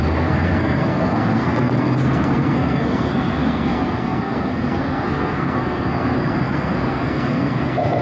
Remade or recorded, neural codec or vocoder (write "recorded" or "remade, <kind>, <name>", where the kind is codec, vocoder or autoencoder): remade, codec, SNAC